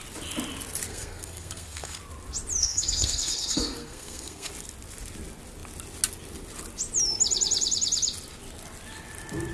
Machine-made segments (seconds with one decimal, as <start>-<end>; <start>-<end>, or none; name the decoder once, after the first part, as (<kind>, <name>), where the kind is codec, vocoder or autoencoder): 0.9-2.0 (codec, SNAC); 2.6-4.5